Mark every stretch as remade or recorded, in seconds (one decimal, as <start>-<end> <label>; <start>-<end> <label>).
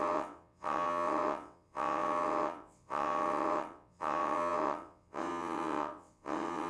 0.0-6.7 remade